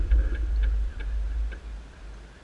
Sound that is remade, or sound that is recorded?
recorded